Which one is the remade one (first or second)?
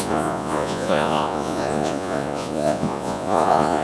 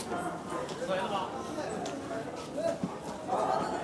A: first